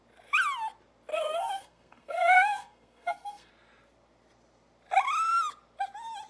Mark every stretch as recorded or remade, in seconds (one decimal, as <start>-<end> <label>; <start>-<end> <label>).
0.0-1.1 recorded; 1.1-3.5 remade; 3.5-6.3 recorded